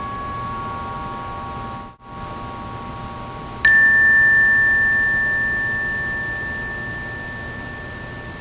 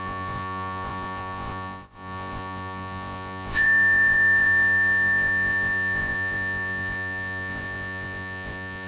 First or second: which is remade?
second